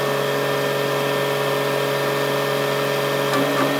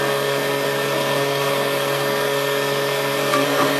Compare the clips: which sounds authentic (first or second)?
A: first